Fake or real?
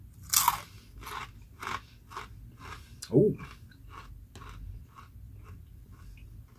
real